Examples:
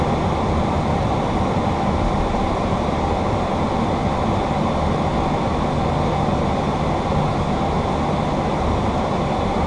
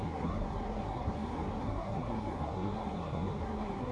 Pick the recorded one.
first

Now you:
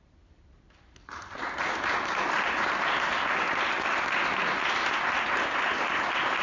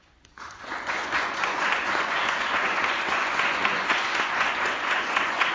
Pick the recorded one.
first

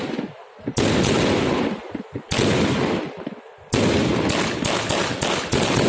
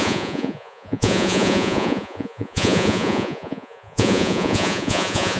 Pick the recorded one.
first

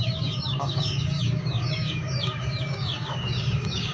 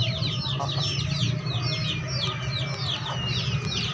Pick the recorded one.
second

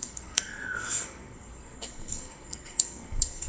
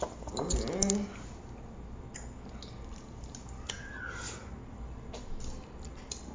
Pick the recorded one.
second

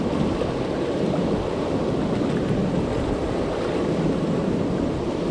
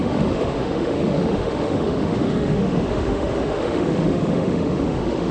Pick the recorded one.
first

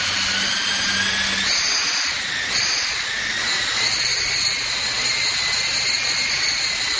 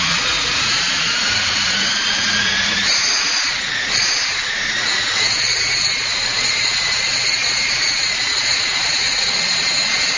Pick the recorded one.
first